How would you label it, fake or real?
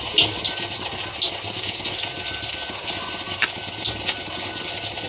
real